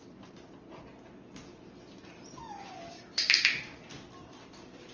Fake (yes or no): no